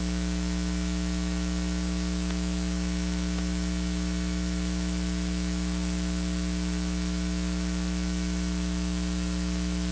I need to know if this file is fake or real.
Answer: fake